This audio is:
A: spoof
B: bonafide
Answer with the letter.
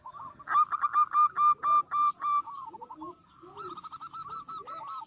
B